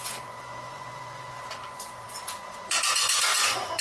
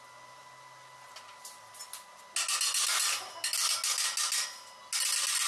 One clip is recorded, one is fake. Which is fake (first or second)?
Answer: first